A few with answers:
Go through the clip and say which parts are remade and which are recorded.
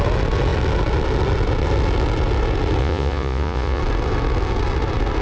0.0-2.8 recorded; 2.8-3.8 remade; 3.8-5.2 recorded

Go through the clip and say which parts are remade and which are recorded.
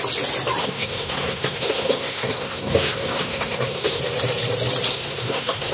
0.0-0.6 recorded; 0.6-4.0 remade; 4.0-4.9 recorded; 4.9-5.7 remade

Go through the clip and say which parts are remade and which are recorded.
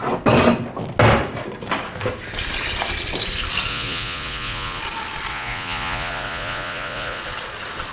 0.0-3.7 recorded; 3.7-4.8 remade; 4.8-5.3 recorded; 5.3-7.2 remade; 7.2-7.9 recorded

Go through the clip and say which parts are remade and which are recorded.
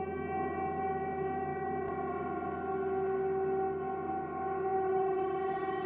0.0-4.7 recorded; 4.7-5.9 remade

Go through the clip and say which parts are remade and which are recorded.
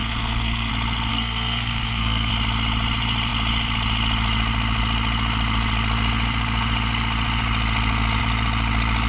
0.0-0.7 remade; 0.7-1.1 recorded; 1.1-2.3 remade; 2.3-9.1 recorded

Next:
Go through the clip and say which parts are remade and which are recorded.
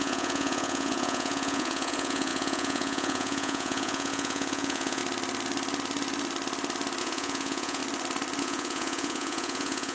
0.0-5.0 remade; 5.0-7.0 recorded; 7.0-7.8 remade; 7.8-8.4 recorded; 8.4-9.9 remade